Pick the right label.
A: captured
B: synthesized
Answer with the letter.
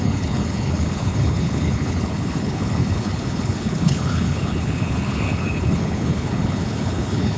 B